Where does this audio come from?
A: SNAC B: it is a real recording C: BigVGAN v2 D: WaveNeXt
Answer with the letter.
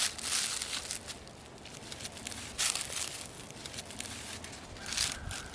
B